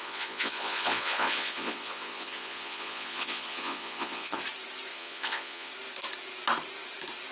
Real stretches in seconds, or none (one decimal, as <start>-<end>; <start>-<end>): 4.4-4.9; 5.7-7.3